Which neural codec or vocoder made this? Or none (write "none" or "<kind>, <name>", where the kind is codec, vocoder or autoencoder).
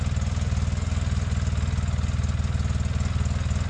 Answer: none